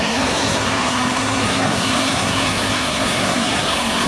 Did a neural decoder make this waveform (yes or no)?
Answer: yes